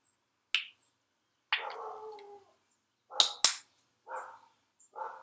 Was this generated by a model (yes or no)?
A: no